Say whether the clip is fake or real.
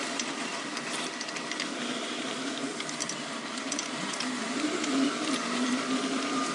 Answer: fake